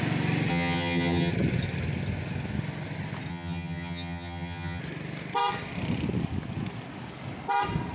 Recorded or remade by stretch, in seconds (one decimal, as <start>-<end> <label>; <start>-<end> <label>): 0.0-0.5 recorded; 0.5-1.3 remade; 1.3-3.3 recorded; 3.3-4.8 remade; 4.8-7.9 recorded